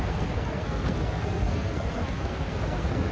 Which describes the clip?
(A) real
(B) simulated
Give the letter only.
B